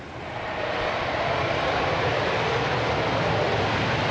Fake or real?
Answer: real